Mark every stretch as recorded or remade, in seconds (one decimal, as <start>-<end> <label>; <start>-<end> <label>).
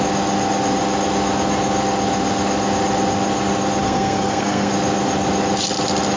0.0-3.8 recorded; 3.8-4.7 remade; 4.7-6.2 recorded